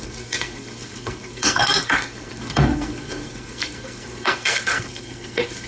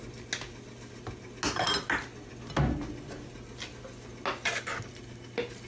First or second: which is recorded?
second